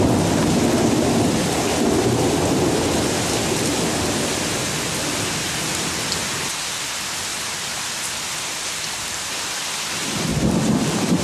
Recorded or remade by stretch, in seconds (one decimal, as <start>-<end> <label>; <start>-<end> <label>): 0.0-7.3 recorded; 7.3-9.5 remade; 9.5-11.2 recorded